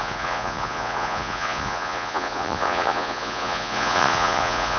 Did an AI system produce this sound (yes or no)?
yes